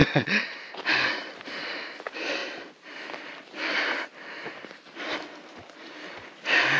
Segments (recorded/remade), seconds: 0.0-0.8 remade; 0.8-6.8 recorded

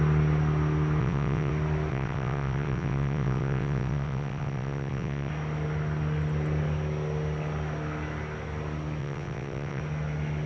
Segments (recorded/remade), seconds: 0.0-1.0 recorded; 1.0-1.5 remade; 1.5-1.9 recorded; 1.9-5.3 remade; 5.3-9.0 recorded; 9.0-9.8 remade; 9.8-10.5 recorded

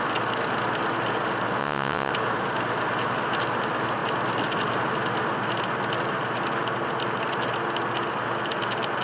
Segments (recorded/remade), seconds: 0.0-1.6 recorded; 1.6-2.1 remade; 2.1-9.0 recorded